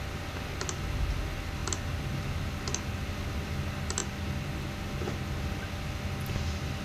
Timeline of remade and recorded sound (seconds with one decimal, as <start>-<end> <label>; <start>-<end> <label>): 0.0-6.8 recorded